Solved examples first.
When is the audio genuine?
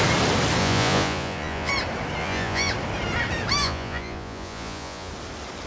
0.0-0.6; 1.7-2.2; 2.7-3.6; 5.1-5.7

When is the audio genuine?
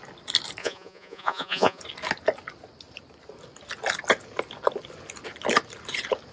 0.0-0.6; 1.8-6.3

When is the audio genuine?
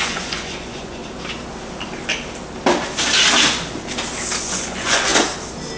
1.0-4.4; 5.1-5.8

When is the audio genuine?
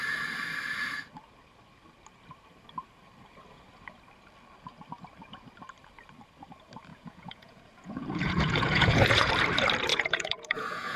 0.0-6.9; 9.3-9.9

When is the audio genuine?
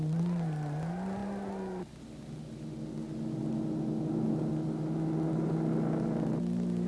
0.0-6.9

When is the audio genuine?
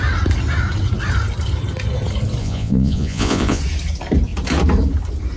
0.0-2.4; 3.6-5.4